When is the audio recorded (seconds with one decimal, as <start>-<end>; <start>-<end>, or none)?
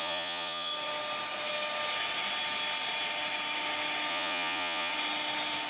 0.7-4.1; 4.9-5.7